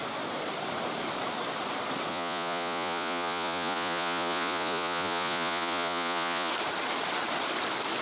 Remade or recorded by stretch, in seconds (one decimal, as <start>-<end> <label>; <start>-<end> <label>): 0.0-2.1 recorded; 2.1-6.5 remade; 6.5-8.0 recorded

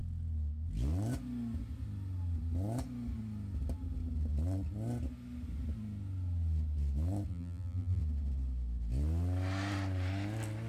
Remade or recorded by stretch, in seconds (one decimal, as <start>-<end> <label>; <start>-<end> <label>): 0.0-7.3 recorded; 7.3-8.0 remade; 8.0-10.7 recorded

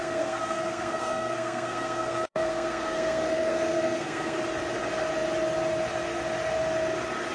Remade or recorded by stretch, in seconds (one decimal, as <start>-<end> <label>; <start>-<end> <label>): 0.0-4.4 remade; 4.4-7.3 recorded

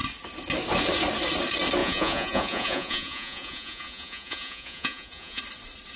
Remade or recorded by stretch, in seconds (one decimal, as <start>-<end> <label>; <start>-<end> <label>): 0.0-1.8 recorded; 1.8-5.4 remade; 5.4-6.0 recorded

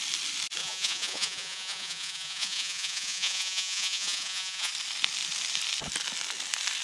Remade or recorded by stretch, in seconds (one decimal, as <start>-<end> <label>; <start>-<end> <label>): 0.0-0.6 recorded; 0.6-4.7 remade; 4.7-6.8 recorded

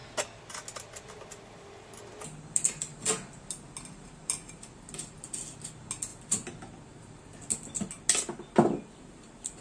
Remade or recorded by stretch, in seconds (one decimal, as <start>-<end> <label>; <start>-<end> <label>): 0.0-9.6 recorded